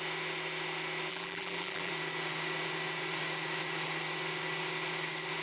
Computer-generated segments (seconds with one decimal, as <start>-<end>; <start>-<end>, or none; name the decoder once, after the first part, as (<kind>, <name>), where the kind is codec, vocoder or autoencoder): 1.1-1.9 (vocoder, BigVGAN v2)